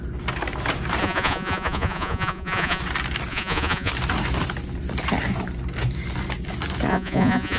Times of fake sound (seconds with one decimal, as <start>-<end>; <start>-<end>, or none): 1.0-2.8; 3.3-3.9; 6.9-7.6